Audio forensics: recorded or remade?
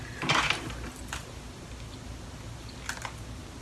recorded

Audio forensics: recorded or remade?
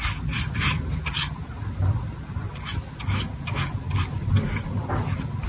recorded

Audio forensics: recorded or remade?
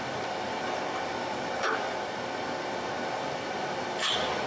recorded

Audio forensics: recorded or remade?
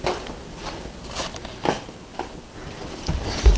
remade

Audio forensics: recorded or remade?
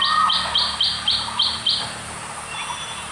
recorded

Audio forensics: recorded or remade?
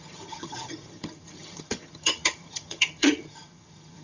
remade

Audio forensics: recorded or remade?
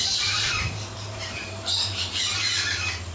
remade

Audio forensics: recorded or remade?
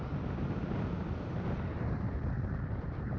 recorded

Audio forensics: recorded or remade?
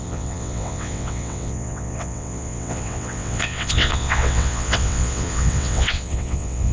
remade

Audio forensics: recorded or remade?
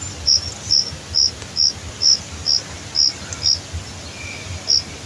recorded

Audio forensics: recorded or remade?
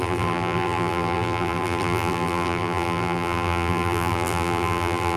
remade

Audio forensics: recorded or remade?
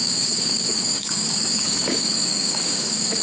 remade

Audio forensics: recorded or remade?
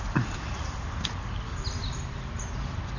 recorded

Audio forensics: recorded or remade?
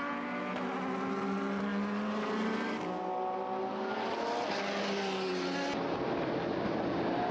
recorded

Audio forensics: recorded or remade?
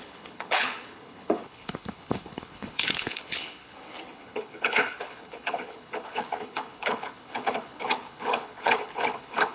remade